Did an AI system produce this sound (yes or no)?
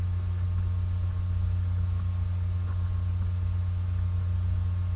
no